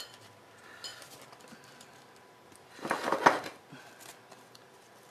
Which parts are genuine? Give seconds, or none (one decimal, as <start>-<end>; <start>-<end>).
0.0-5.1

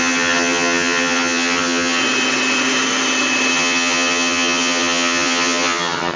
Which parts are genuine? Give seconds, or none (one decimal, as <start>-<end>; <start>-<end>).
2.0-3.5

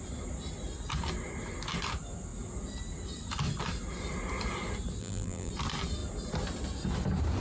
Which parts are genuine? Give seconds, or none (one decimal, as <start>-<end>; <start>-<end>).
0.0-5.0; 5.5-7.4

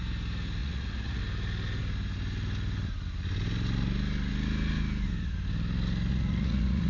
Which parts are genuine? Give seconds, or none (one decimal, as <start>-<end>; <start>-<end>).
0.0-0.6; 1.2-6.1

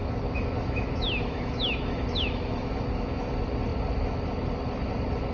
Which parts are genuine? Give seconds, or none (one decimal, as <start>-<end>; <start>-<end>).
3.2-5.3

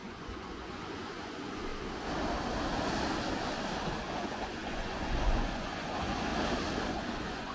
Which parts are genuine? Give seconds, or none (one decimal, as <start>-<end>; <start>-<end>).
1.7-4.1; 6.3-6.9